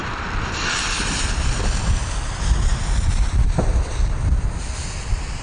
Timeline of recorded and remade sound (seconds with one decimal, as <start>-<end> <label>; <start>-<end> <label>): 0.0-2.1 remade; 2.1-2.7 recorded; 2.7-4.6 remade; 4.6-5.4 recorded